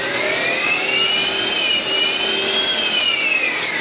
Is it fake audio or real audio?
real